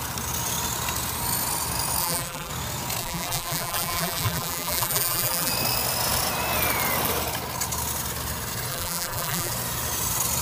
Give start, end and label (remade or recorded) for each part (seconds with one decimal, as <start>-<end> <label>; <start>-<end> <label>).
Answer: 0.0-2.0 recorded; 2.0-2.5 remade; 2.5-3.0 recorded; 3.0-5.5 remade; 5.5-8.7 recorded; 8.7-9.5 remade; 9.5-10.4 recorded